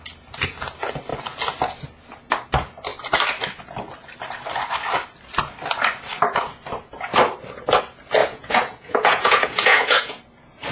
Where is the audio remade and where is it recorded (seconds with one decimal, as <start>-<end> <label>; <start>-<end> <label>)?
0.0-8.2 recorded; 8.2-10.2 remade; 10.2-10.7 recorded